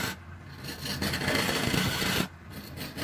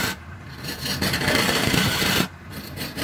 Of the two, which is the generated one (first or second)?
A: second